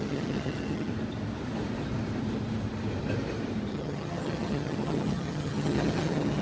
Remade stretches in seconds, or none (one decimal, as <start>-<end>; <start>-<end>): 0.0-0.9; 3.7-6.4